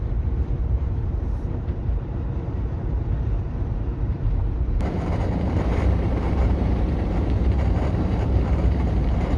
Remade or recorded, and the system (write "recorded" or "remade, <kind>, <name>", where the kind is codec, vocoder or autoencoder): remade, vocoder, BigVGAN v2